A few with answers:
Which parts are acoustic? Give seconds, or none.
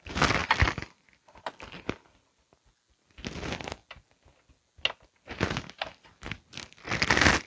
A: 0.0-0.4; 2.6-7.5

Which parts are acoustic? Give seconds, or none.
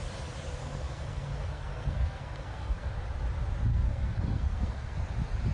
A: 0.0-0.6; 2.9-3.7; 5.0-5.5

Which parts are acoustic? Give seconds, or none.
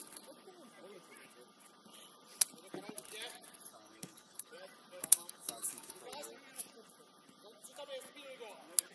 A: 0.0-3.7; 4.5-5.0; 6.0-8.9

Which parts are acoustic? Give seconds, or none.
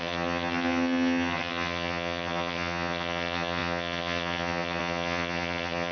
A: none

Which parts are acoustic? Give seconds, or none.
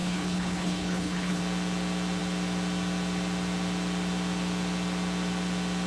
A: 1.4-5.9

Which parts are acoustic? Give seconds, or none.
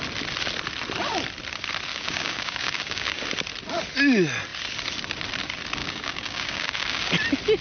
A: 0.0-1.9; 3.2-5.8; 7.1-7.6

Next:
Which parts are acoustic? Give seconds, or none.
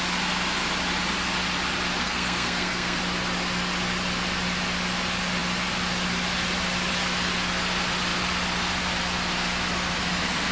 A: 0.0-2.0; 3.0-10.5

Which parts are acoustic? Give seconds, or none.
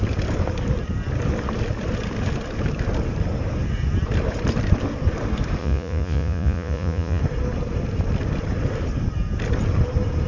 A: 0.0-5.6; 7.2-10.3